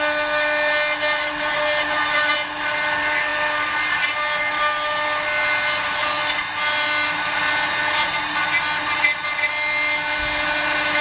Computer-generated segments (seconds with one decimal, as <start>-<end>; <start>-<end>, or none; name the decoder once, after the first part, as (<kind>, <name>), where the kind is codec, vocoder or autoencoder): none